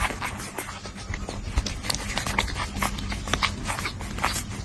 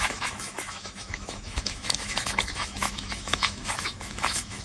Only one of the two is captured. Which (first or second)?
first